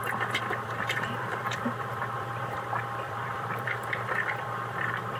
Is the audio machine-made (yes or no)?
yes